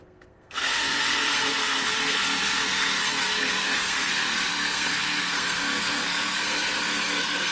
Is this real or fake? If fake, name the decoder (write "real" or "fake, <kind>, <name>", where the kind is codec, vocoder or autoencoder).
fake, codec, SNAC